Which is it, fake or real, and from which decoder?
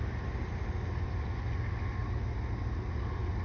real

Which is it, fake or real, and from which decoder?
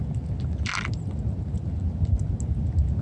real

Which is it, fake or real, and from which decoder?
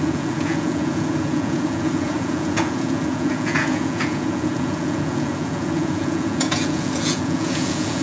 fake, vocoder, Vocos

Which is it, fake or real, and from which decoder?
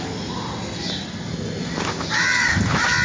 real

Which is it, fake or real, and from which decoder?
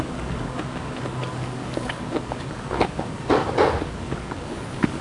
fake, codec, DAC